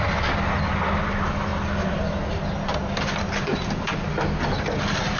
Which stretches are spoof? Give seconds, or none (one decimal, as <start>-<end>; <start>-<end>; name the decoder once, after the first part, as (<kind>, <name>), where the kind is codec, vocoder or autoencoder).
none